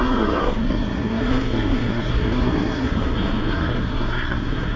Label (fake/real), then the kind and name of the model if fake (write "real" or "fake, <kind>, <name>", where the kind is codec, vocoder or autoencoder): fake, codec, SNAC